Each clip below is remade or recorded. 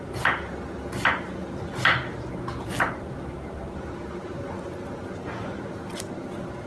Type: recorded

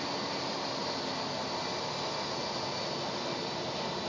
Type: recorded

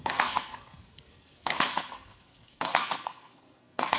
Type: remade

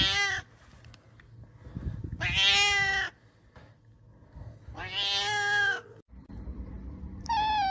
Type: recorded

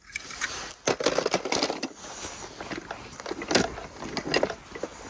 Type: recorded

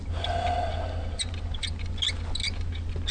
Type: recorded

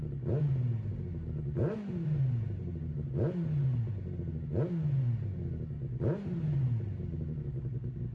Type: recorded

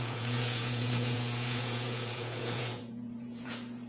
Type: remade